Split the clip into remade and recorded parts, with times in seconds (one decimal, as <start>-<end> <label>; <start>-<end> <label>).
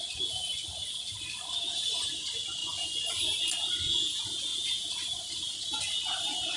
0.0-0.5 recorded; 0.5-1.5 remade; 1.5-2.6 recorded; 2.6-3.4 remade; 3.4-6.6 recorded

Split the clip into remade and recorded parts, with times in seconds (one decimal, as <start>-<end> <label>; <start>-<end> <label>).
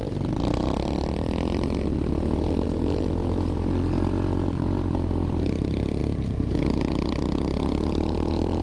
0.0-6.0 recorded; 6.0-6.6 remade; 6.6-8.6 recorded